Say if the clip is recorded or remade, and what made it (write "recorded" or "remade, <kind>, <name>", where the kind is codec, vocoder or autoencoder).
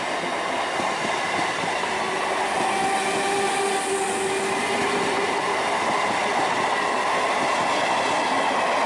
recorded